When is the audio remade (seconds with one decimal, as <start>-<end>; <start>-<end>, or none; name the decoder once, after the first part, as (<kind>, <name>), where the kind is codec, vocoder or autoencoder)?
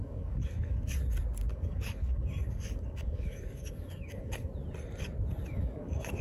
0.0-0.9 (codec, DAC); 1.5-4.5; 5.5-6.2